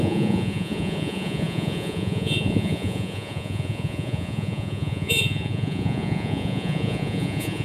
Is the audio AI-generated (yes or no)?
yes